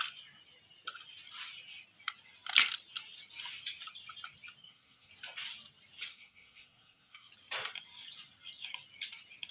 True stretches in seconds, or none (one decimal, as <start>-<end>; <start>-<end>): 0.0-4.6; 5.1-6.1; 7.3-9.5